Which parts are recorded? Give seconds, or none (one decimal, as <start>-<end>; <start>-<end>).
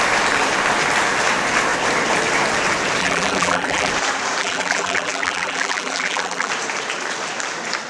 0.0-3.0; 3.9-4.4; 6.5-7.9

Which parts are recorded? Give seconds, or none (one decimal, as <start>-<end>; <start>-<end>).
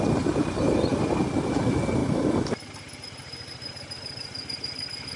0.0-2.0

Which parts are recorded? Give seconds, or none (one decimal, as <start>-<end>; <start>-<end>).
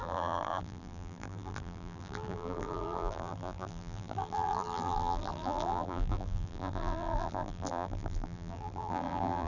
none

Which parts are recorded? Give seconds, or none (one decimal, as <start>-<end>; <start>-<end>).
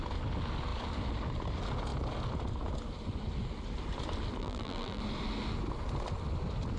0.0-4.4; 5.0-6.8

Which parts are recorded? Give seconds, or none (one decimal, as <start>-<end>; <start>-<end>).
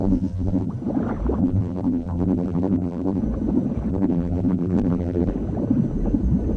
0.7-1.4; 3.2-3.9; 5.3-6.6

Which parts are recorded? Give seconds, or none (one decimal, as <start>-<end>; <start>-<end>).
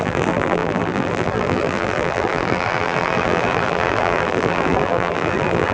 none